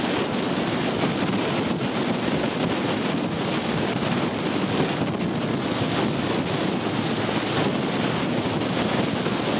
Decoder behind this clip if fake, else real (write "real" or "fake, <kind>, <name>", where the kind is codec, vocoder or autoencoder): real